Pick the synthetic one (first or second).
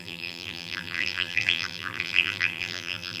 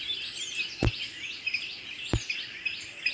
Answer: first